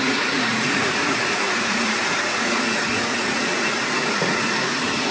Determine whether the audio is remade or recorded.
remade